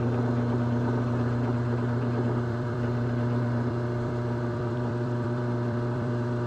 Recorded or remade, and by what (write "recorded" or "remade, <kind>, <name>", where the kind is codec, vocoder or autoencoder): remade, vocoder, BigVGAN v2